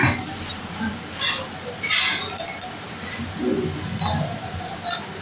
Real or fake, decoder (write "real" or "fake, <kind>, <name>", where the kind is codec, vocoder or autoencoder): real